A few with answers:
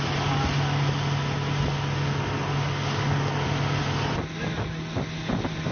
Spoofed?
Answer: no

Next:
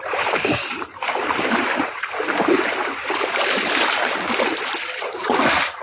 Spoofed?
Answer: yes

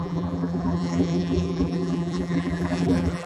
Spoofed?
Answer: yes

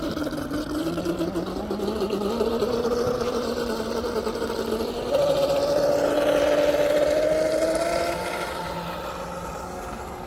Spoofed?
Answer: no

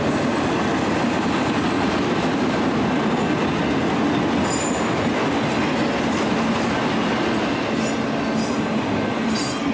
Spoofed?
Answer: no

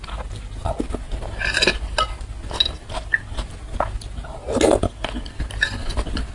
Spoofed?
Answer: no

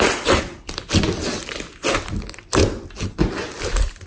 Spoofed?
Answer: no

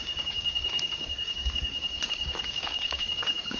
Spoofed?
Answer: yes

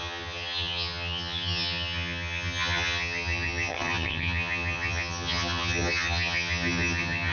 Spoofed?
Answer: yes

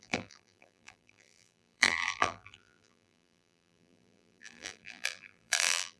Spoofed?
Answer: yes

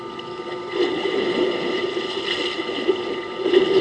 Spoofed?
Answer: no